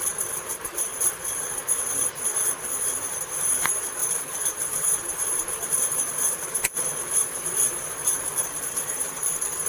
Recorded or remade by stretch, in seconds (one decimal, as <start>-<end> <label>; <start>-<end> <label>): 0.0-4.0 recorded; 4.0-9.1 remade; 9.1-9.7 recorded